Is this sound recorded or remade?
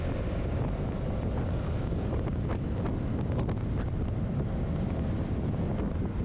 recorded